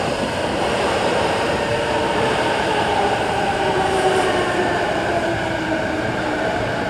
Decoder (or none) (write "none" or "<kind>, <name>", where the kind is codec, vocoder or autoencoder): vocoder, BigVGAN v2